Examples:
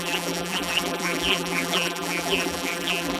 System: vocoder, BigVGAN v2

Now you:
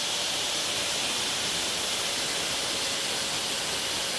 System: none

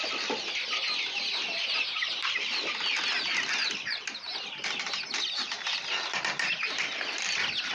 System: none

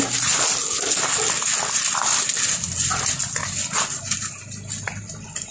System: none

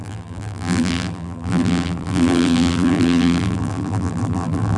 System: vocoder, BigVGAN v2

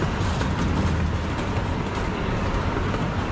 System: none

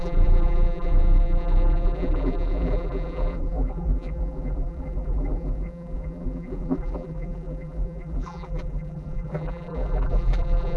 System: vocoder, BigVGAN v2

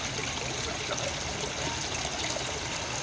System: none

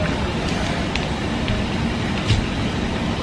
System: none